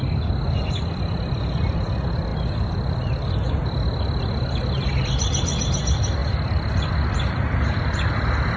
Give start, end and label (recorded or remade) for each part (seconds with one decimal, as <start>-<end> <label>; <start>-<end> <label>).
0.0-8.6 recorded